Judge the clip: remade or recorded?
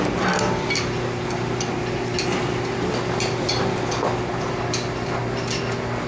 recorded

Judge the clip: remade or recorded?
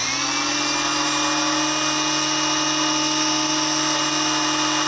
recorded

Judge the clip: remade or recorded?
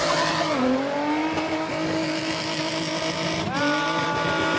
recorded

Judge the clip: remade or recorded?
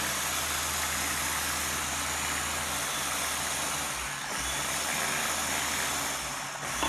recorded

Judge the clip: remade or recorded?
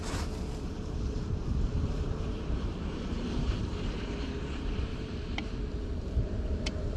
remade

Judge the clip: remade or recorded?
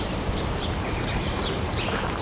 recorded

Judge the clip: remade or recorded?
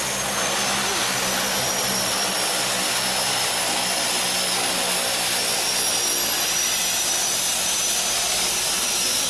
recorded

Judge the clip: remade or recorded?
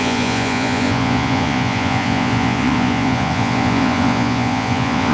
remade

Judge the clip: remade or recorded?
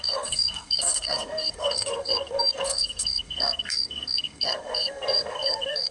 remade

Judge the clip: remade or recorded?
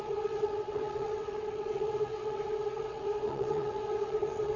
remade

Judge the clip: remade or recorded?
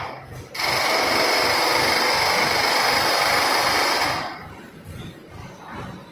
recorded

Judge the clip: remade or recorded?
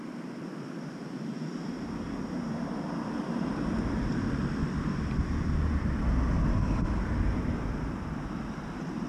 remade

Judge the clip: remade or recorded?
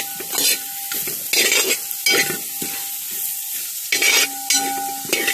recorded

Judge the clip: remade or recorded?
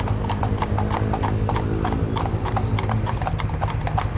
recorded